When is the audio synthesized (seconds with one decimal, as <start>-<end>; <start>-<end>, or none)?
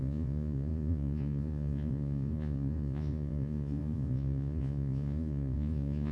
0.0-6.1